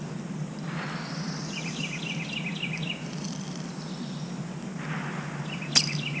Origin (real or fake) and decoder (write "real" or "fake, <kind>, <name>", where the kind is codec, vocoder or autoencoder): real